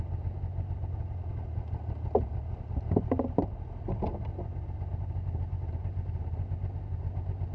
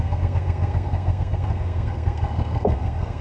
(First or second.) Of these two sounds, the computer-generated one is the second